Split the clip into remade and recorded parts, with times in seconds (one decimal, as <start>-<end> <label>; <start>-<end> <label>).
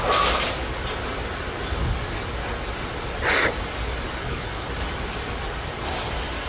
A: 0.0-4.2 recorded; 4.2-4.7 remade; 4.7-6.5 recorded